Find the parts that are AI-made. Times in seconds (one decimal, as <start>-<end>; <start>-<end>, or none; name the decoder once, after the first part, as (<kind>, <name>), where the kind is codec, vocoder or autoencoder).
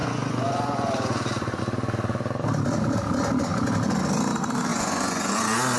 0.0-1.6 (vocoder, Vocos); 4.7-5.3